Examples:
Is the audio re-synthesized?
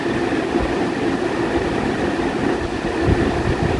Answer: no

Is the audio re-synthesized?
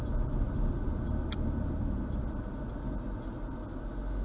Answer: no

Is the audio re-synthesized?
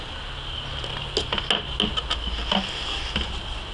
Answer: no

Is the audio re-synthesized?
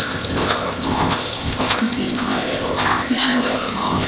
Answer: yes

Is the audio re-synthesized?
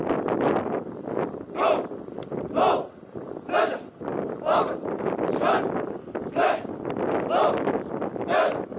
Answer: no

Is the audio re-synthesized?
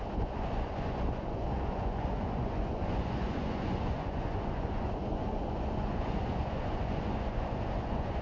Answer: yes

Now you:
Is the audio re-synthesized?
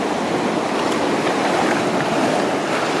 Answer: no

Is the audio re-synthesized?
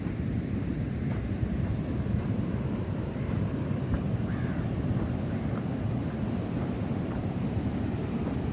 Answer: yes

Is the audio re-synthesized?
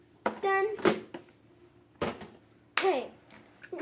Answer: no